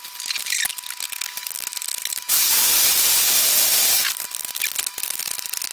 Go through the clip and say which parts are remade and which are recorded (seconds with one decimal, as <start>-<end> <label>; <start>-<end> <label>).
0.0-0.7 remade; 0.7-2.1 recorded; 2.1-5.7 remade